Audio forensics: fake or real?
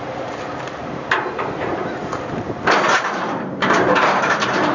fake